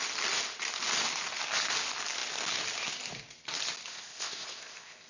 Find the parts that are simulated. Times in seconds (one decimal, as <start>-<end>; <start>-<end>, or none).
3.9-5.1